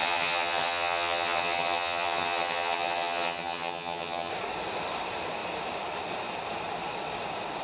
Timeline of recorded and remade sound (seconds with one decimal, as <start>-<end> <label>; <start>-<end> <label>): 0.0-4.3 remade; 4.3-7.6 recorded

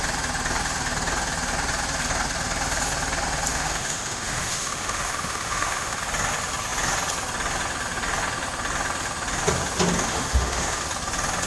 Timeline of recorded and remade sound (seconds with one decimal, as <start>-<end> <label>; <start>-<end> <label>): 0.0-3.5 recorded; 3.5-6.0 remade; 6.0-10.1 recorded; 10.1-10.8 remade; 10.8-11.5 recorded

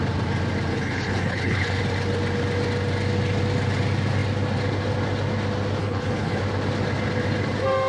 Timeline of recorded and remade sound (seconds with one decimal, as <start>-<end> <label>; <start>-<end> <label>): 0.0-0.7 recorded; 0.7-1.8 remade; 1.8-5.8 recorded; 5.8-6.4 remade; 6.4-7.9 recorded